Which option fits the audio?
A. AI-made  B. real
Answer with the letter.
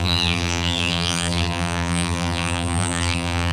A